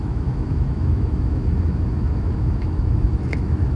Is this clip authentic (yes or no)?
no